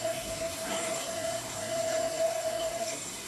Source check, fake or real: fake